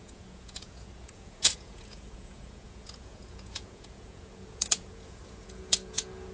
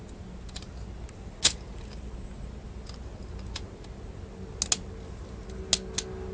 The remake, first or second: first